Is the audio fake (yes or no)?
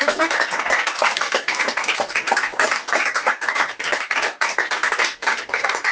yes